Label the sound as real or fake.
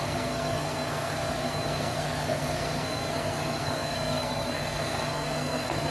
fake